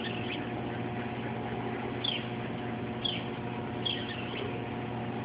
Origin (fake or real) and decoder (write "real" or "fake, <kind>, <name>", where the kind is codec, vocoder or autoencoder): real